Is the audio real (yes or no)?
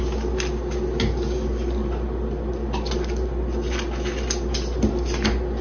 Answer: yes